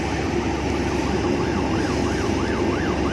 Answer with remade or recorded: remade